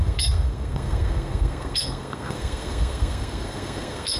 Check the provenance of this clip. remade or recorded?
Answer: remade